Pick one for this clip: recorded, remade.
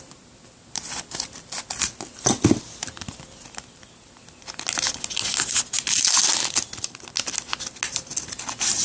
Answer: recorded